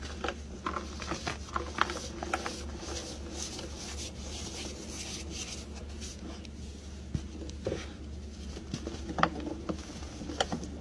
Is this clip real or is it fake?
real